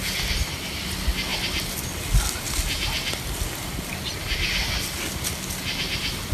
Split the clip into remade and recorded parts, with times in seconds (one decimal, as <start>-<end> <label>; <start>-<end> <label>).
0.0-6.3 recorded

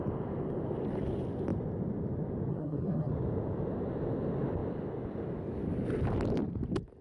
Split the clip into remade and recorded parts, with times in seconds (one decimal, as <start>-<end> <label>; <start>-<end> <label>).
0.0-2.5 recorded; 2.5-3.1 remade; 3.1-7.0 recorded

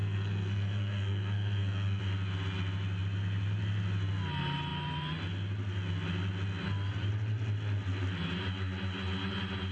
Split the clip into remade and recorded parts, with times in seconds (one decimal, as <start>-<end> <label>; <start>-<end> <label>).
0.0-2.0 remade; 2.0-9.7 recorded

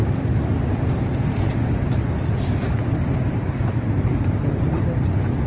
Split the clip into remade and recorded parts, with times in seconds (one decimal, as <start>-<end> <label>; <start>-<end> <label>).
0.0-1.8 recorded; 1.8-5.1 remade; 5.1-5.5 recorded

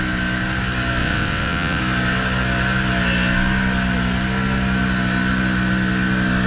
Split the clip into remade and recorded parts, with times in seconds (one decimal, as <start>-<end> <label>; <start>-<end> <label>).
0.0-1.0 recorded; 1.0-1.8 remade; 1.8-6.5 recorded

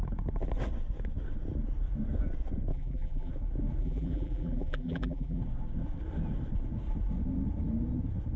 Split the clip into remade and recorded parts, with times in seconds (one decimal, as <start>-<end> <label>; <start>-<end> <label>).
0.0-2.7 recorded; 2.7-3.3 remade; 3.3-3.8 recorded; 3.8-5.4 remade; 5.4-8.4 recorded

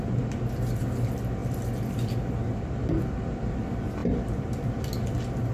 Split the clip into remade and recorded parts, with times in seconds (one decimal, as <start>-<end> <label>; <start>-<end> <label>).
0.0-4.0 recorded; 4.0-4.8 remade; 4.8-5.5 recorded

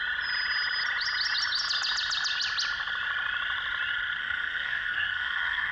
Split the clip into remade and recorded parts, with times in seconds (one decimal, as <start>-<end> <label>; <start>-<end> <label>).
0.0-4.2 recorded; 4.2-5.7 remade